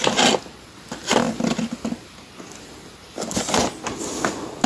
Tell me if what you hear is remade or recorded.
recorded